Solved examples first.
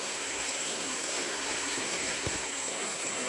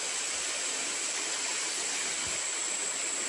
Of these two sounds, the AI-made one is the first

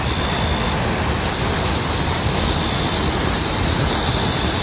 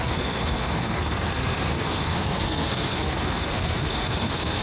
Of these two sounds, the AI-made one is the second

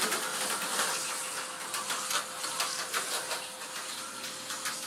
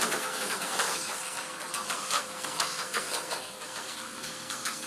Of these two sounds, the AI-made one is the second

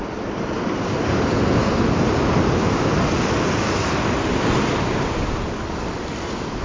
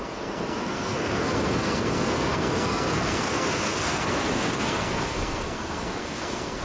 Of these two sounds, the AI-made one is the second